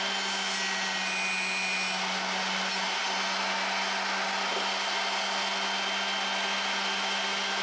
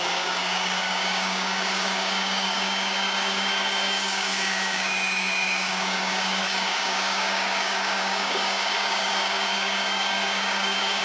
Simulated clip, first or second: second